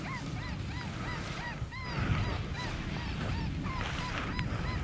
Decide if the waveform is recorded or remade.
recorded